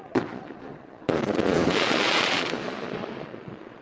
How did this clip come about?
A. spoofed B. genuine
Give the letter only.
A